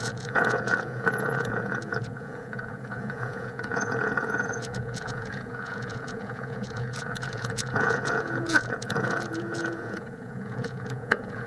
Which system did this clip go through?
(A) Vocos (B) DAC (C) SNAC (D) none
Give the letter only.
A